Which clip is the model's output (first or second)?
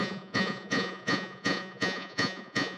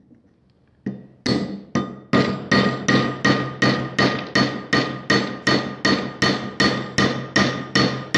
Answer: first